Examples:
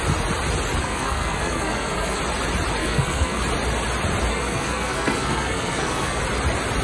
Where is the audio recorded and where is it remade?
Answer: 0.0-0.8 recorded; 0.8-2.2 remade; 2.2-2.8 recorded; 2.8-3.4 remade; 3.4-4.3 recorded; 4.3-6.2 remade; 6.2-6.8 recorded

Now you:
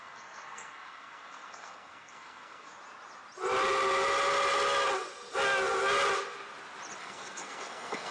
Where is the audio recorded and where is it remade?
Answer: 0.0-2.7 remade; 2.7-7.0 recorded; 7.0-8.1 remade

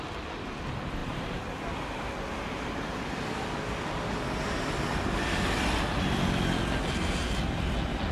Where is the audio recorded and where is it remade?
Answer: 0.0-8.1 recorded

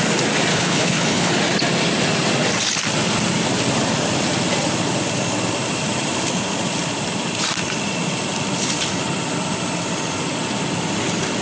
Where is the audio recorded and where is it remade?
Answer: 0.0-0.5 recorded; 0.5-1.3 remade; 1.3-11.4 recorded

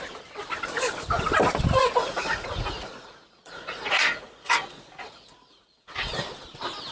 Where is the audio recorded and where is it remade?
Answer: 0.0-2.0 recorded; 2.0-6.1 remade; 6.1-6.9 recorded

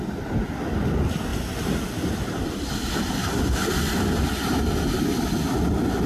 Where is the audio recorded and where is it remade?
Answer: 0.0-6.1 recorded

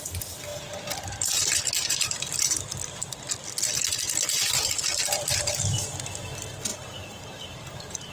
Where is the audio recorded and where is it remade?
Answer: 0.0-6.7 recorded; 6.7-8.1 remade